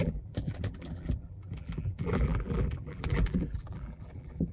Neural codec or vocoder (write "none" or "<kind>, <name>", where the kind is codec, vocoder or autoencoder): vocoder, BigVGAN v2